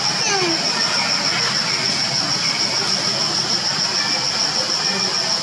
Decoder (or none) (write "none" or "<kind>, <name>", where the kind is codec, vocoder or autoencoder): none